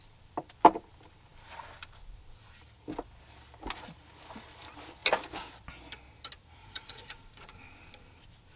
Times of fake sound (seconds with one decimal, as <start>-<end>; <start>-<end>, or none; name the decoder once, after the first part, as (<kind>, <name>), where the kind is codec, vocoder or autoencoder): 6.6-7.6 (vocoder, Vocos)